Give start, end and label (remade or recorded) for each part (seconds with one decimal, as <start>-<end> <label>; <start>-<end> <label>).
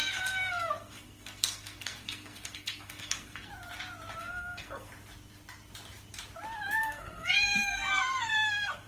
0.0-3.5 remade; 3.5-4.2 recorded; 4.2-4.9 remade; 4.9-6.8 recorded; 6.8-8.9 remade